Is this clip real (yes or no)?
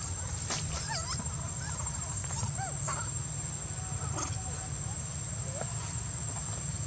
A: yes